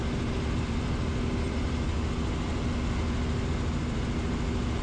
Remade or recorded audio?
recorded